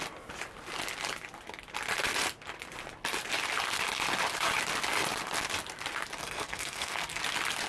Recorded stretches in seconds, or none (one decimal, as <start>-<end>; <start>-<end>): 0.0-6.2; 7.2-7.7